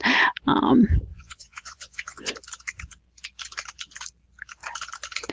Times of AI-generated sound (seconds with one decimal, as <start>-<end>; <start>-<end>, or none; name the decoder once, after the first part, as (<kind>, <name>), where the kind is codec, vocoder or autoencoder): 1.1-2.3 (vocoder, Vocos)

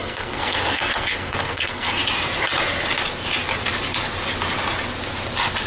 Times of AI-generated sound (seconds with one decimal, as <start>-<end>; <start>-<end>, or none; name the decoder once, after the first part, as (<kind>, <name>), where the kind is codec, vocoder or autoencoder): 0.0-2.0 (codec, SNAC)